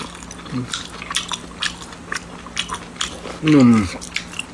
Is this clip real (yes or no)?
yes